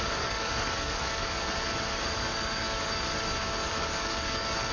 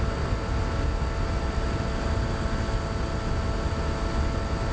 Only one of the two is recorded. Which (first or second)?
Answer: second